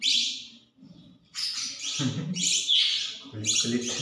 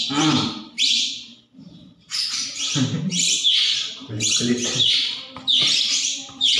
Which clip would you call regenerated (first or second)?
second